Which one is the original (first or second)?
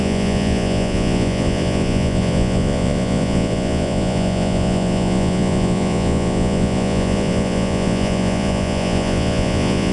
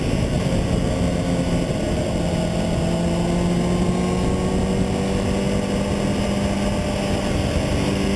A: second